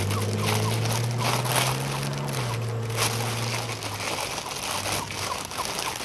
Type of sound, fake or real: real